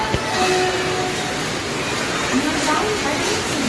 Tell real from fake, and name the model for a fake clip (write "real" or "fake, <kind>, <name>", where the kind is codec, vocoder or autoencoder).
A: real